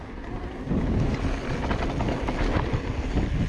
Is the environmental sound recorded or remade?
recorded